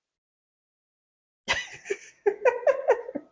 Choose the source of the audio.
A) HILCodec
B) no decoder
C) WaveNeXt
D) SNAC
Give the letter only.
B